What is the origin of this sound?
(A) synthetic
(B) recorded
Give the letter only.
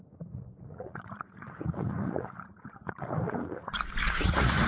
A